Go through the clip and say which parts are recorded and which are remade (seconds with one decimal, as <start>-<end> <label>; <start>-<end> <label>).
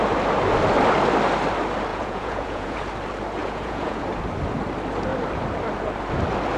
0.0-1.9 recorded; 1.9-2.9 remade; 2.9-3.4 recorded; 3.4-4.0 remade; 4.0-6.6 recorded